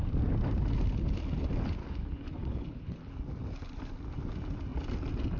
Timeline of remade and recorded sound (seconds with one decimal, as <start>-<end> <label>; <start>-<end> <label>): 0.0-1.8 recorded; 1.8-3.1 remade; 3.1-5.4 recorded

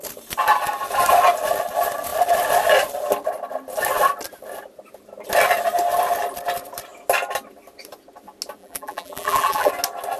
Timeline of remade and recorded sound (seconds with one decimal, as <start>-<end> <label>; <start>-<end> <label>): 0.0-8.6 recorded; 8.6-9.7 remade; 9.7-10.2 recorded

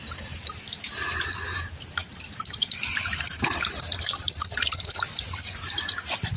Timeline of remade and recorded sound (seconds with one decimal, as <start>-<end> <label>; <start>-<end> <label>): 0.0-6.4 remade

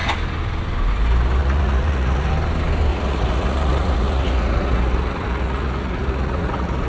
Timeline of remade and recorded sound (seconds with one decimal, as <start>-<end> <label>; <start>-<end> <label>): 0.0-1.4 recorded; 1.4-2.3 remade; 2.3-2.9 recorded; 2.9-6.9 remade

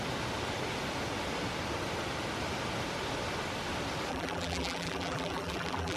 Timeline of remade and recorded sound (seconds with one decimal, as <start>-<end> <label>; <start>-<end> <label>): 0.0-4.1 recorded; 4.1-6.0 remade

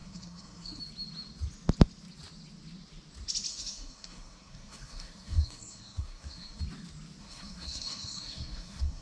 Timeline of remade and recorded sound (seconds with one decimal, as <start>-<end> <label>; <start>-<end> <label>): 0.0-0.8 remade; 0.8-3.5 recorded; 3.5-6.6 remade; 6.6-7.2 recorded; 7.2-9.0 remade